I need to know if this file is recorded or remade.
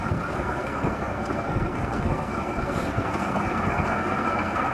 remade